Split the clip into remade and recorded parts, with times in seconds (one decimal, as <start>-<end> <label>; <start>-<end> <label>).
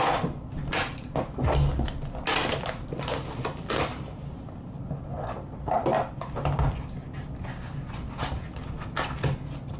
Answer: 0.0-9.8 recorded